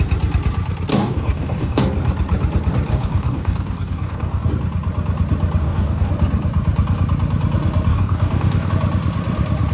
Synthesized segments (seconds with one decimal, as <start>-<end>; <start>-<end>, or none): 0.9-1.8; 2.9-4.5; 5.6-6.1; 7.9-8.7